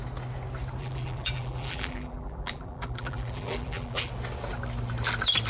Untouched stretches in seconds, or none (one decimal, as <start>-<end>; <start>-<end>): 0.0-0.8; 4.1-5.5